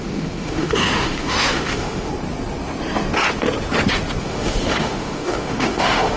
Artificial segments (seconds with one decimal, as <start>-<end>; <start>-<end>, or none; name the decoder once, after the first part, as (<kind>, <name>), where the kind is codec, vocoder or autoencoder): 0.0-2.1 (autoencoder, DAC-VAE); 4.2-6.2